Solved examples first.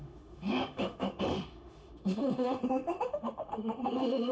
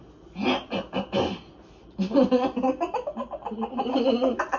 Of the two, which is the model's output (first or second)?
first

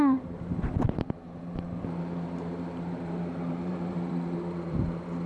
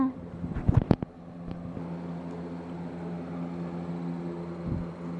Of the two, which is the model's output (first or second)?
first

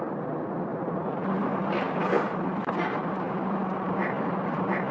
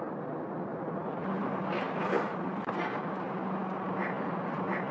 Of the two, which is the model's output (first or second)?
first